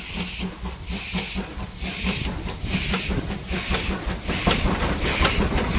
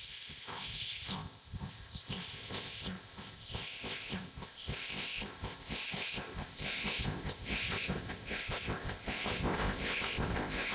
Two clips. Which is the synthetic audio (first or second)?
second